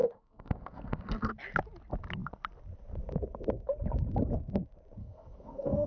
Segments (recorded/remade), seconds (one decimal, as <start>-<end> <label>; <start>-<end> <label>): 0.0-1.3 remade; 1.3-5.0 recorded; 5.0-5.9 remade